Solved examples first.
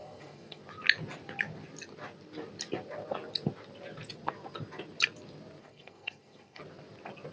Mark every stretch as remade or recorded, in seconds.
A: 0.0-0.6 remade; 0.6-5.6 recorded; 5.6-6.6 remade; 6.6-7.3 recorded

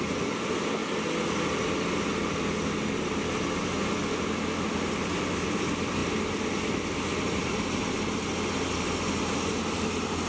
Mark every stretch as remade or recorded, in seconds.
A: 0.0-10.3 recorded

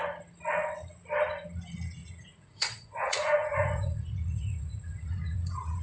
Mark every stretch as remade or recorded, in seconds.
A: 0.0-2.0 recorded; 2.0-5.8 remade

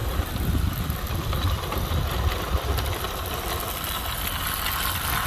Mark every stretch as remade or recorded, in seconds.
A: 0.0-5.3 recorded

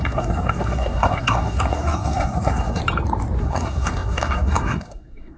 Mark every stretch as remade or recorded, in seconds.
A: 0.0-2.8 remade; 2.8-3.4 recorded; 3.4-5.4 remade

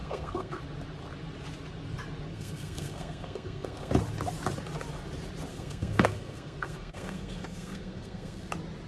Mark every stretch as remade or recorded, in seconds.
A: 0.0-0.6 remade; 0.6-2.3 recorded; 2.3-3.9 remade; 3.9-5.5 recorded; 5.5-8.5 remade; 8.5-8.9 recorded

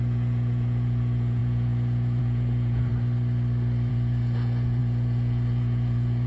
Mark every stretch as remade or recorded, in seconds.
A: 0.0-2.9 remade; 2.9-3.9 recorded; 3.9-6.3 remade

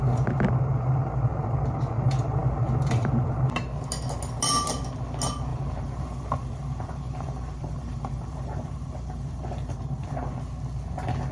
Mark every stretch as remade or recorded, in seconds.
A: 0.0-5.5 recorded; 5.5-10.3 remade; 10.3-11.3 recorded